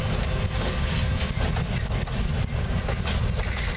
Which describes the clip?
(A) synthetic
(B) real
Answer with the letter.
B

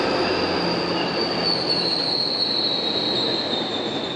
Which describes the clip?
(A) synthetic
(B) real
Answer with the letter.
B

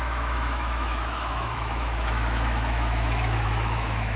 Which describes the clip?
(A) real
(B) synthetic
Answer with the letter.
B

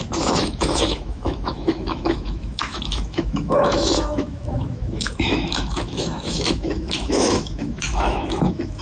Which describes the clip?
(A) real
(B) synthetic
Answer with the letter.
B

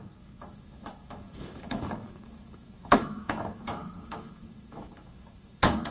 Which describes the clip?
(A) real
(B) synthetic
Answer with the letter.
B